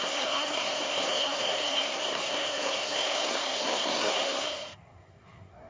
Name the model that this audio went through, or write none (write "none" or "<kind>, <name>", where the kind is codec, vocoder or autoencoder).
codec, SNAC